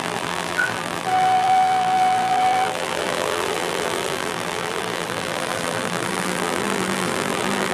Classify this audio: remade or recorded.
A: remade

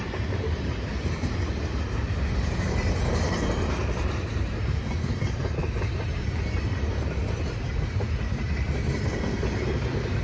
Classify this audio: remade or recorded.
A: remade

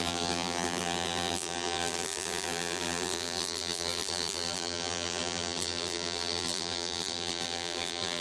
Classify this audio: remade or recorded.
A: remade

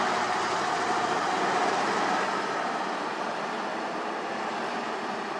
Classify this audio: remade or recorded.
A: remade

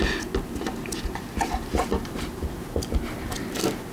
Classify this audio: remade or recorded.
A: recorded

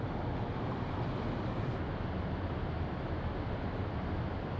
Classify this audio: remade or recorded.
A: recorded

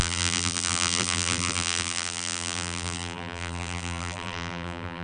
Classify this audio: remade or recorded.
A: remade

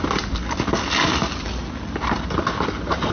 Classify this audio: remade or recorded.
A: remade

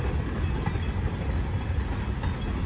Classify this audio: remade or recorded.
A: recorded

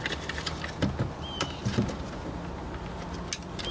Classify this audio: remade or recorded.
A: recorded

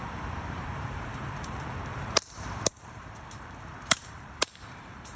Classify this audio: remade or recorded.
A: remade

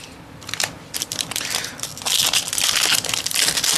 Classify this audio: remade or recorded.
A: remade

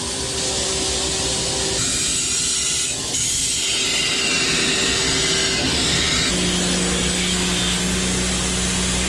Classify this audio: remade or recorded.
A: recorded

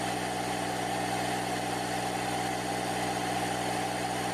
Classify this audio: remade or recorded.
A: recorded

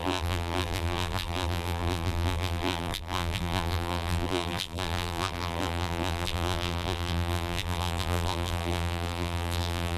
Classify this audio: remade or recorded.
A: remade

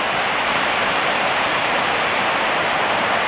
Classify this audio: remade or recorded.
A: remade